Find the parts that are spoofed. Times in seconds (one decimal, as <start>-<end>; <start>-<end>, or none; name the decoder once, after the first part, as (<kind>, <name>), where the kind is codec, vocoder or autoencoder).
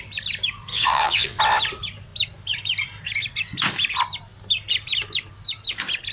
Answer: 0.7-1.4 (vocoder, WaveNeXt)